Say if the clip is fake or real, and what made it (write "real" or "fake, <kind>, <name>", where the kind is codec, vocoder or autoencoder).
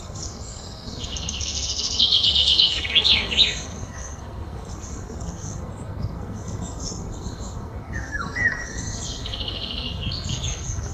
fake, codec, SNAC